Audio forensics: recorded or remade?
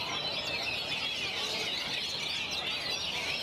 recorded